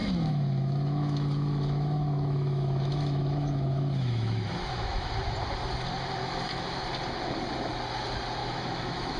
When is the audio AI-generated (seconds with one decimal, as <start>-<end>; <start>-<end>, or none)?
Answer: 0.0-5.1; 6.2-6.8; 8.4-9.2